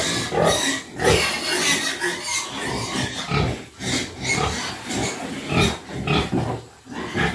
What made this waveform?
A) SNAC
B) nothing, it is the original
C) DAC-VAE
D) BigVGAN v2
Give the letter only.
B